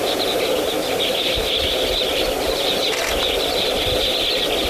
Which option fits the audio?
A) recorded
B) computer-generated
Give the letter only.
B